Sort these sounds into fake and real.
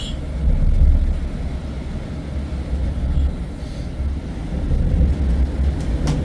real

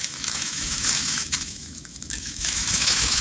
fake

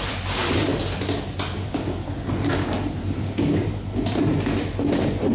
real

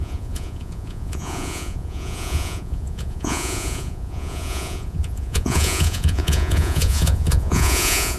fake